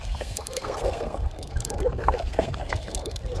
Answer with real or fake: fake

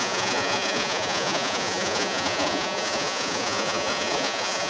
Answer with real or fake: fake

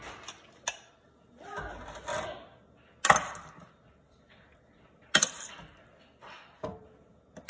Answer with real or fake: real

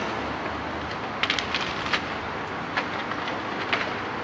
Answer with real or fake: real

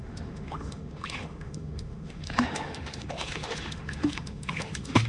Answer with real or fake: fake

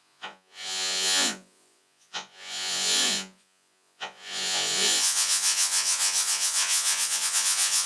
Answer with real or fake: fake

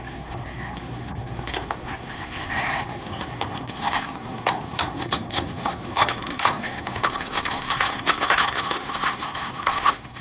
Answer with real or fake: fake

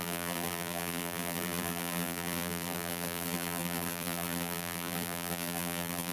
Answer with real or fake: fake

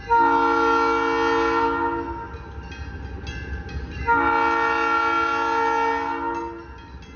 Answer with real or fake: real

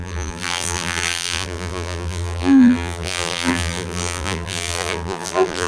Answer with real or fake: fake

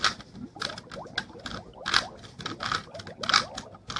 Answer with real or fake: real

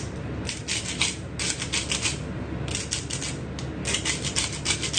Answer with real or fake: real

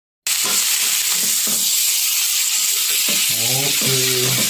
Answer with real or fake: real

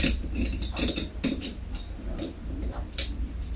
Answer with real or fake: real